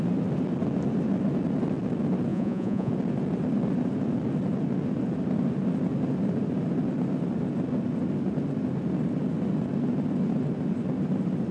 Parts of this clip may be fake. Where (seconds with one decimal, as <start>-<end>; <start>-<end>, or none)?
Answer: 2.3-2.9